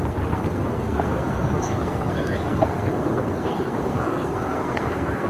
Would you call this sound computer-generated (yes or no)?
yes